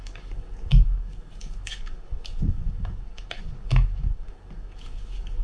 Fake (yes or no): yes